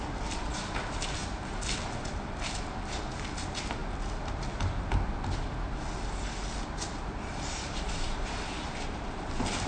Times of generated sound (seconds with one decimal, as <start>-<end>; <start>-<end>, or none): none